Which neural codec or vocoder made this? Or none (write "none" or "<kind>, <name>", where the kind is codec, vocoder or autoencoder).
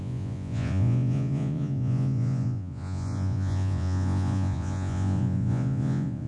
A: vocoder, Vocos